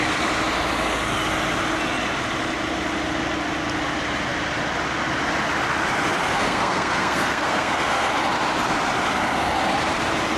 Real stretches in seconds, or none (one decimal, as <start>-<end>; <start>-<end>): 0.0-6.4; 8.1-10.4